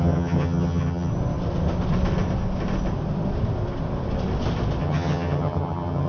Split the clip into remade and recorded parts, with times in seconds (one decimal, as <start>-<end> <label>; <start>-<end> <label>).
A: 0.0-1.1 remade; 1.1-4.8 recorded; 4.8-6.1 remade